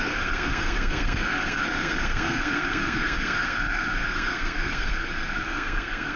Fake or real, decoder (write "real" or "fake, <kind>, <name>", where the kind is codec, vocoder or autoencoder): fake, codec, SNAC